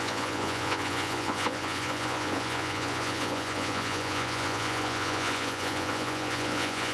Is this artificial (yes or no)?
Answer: yes